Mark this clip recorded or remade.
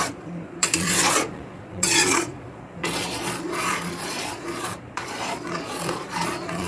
remade